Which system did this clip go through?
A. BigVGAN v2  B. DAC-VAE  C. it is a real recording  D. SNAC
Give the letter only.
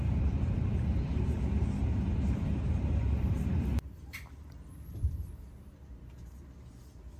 A